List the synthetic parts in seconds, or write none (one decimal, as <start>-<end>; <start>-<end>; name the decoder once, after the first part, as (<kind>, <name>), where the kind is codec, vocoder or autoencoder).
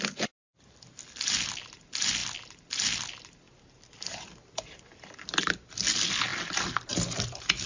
none